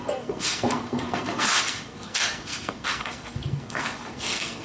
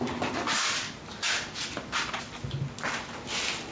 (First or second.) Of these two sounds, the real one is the second